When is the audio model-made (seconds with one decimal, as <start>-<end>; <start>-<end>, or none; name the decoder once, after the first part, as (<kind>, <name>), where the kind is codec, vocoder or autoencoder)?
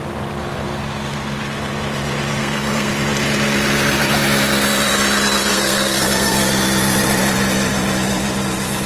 2.4-2.9 (codec, SNAC); 5.5-6.5